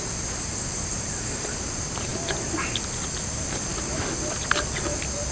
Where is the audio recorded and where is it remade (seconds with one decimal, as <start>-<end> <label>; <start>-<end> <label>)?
0.0-2.1 remade; 2.1-2.8 recorded; 2.8-3.7 remade; 3.7-4.3 recorded; 4.3-5.3 remade